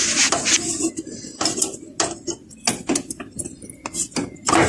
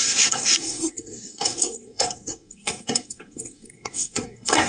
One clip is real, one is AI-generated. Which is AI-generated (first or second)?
second